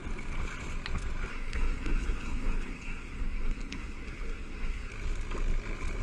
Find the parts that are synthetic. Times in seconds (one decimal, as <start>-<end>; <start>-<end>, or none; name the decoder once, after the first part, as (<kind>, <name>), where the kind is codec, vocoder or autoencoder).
1.3-4.9 (codec, SNAC)